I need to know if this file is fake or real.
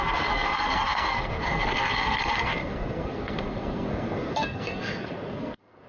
fake